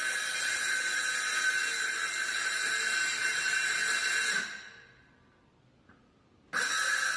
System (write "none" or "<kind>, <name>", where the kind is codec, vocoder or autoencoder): none